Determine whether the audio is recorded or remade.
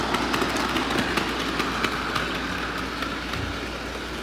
recorded